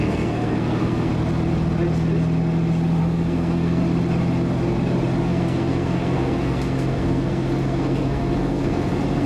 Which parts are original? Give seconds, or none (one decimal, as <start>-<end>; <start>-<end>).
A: 1.1-3.0; 3.8-5.2